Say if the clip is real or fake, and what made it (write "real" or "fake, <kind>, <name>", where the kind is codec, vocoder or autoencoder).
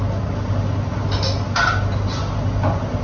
real